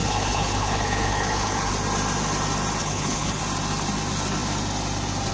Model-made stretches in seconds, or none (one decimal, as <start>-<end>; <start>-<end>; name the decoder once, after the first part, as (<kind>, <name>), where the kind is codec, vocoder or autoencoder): 0.0-1.7 (codec, HILCodec); 2.8-3.4